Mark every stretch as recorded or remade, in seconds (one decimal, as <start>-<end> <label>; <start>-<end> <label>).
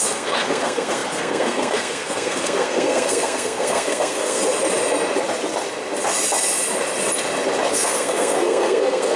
0.0-4.4 remade; 4.4-7.7 recorded; 7.7-9.2 remade